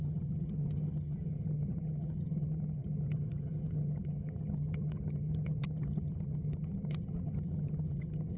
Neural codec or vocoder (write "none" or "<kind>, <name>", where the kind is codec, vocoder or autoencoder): vocoder, HiFi-GAN